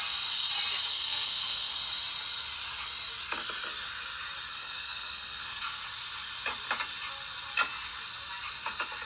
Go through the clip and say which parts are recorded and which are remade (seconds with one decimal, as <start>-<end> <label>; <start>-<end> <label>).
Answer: 0.0-0.9 recorded; 0.9-1.7 remade; 1.7-4.5 recorded; 4.5-5.8 remade; 5.8-9.1 recorded